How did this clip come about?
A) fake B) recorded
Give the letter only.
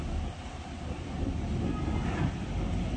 B